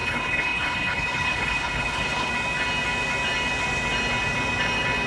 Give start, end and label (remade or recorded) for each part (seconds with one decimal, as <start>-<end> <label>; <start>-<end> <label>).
0.0-2.3 remade; 2.3-5.1 recorded